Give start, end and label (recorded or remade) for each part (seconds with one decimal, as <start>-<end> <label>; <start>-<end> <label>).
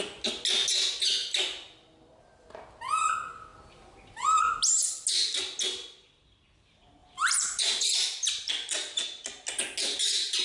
0.0-7.0 recorded; 7.0-8.5 remade; 8.5-10.4 recorded